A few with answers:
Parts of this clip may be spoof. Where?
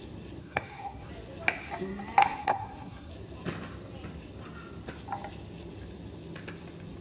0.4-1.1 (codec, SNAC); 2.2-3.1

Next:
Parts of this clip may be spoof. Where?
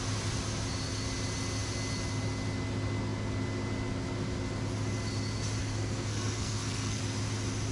5.6-7.0 (codec, SNAC)